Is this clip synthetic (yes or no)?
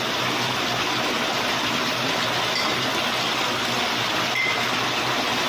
no